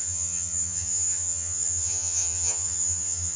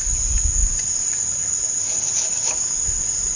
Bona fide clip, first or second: second